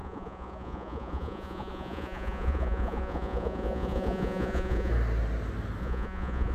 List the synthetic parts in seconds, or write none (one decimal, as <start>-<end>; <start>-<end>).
0.0-4.9; 5.8-6.5